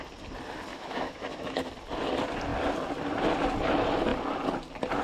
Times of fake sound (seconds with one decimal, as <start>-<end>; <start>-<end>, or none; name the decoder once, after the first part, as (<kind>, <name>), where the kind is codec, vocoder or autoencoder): 0.7-1.7 (autoencoder, DAC-VAE)